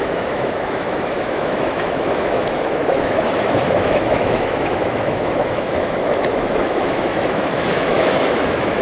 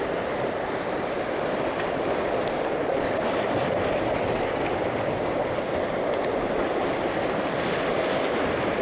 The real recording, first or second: second